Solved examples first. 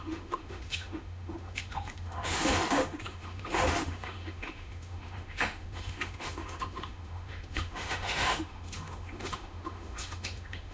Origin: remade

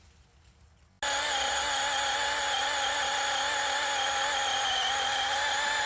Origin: recorded